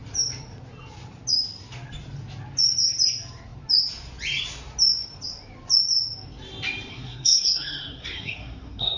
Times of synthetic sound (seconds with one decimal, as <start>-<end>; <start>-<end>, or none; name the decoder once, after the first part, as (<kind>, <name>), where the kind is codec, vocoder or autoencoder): 6.9-9.0 (codec, SNAC)